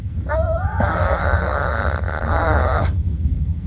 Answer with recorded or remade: remade